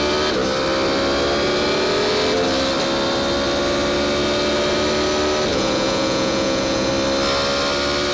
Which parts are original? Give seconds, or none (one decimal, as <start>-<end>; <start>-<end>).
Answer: 0.0-5.5; 6.9-8.1

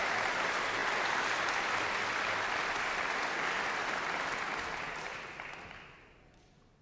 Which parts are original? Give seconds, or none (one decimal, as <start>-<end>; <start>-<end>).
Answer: 0.0-6.8

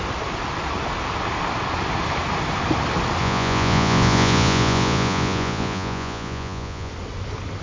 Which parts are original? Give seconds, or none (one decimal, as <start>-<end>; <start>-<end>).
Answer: 0.0-3.2; 6.9-7.6